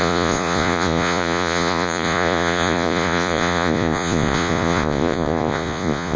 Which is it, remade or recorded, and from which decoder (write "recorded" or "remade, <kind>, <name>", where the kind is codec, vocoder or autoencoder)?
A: remade, vocoder, Vocos